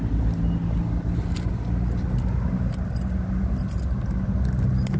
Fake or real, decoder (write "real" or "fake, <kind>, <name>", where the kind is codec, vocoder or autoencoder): real